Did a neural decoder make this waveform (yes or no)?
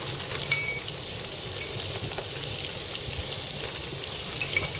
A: no